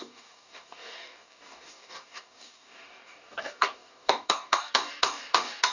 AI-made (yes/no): yes